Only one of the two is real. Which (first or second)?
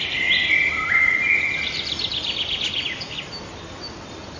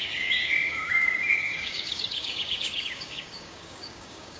first